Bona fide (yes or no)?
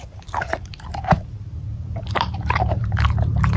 no